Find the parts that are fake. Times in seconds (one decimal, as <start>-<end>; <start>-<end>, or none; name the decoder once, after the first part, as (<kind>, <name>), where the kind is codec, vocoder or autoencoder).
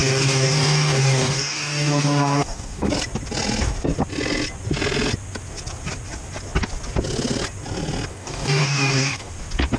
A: 0.0-2.9 (codec, DAC); 8.1-9.3